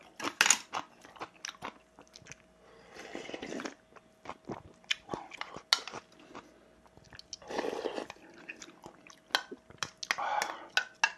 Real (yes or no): yes